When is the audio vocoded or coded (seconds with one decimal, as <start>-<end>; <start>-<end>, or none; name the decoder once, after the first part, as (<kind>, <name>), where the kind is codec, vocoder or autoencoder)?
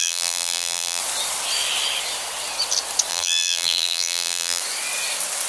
0.0-1.0 (vocoder, BigVGAN v2); 3.1-4.6